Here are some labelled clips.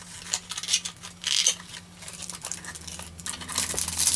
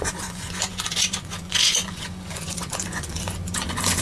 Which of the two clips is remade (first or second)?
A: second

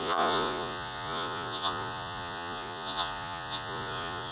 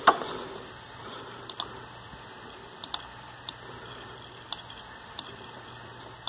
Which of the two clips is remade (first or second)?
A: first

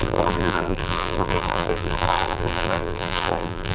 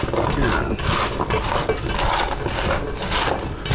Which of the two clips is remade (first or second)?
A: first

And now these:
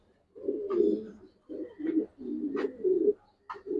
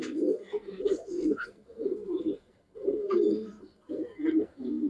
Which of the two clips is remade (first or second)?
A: second